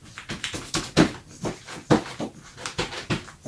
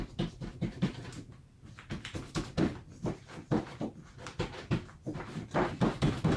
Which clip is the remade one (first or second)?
second